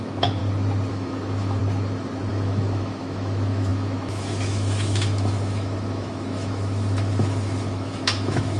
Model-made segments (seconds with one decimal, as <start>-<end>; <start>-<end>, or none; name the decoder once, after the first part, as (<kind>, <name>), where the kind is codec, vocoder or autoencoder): 0.0-0.4 (autoencoder, DAC-VAE); 0.9-1.6; 2.3-8.6